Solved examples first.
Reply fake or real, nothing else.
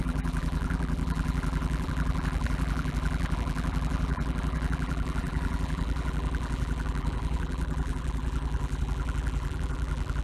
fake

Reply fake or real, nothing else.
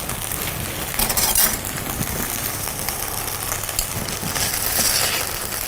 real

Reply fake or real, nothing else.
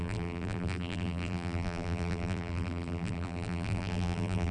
fake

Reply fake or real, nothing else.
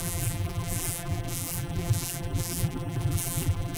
fake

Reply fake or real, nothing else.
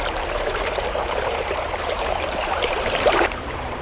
fake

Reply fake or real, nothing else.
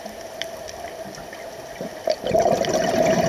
fake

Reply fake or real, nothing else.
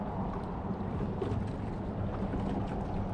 real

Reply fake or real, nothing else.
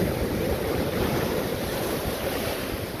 fake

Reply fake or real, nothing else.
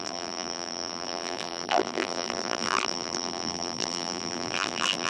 fake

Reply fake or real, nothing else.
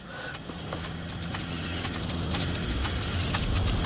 real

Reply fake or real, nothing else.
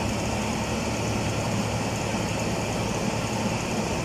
real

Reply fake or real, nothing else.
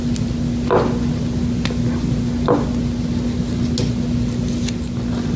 real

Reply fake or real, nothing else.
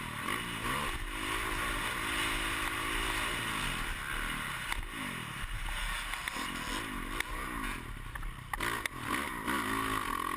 real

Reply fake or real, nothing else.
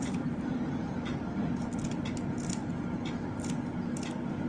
real